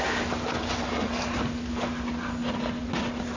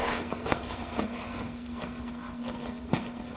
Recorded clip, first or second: first